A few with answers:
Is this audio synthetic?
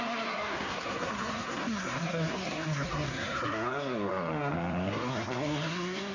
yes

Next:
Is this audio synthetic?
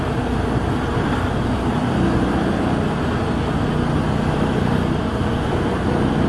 no